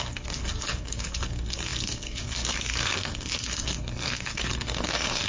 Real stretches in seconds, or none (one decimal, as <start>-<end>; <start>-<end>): none